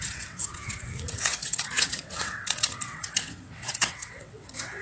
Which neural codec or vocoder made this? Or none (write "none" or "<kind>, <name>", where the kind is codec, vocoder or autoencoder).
vocoder, WaveNeXt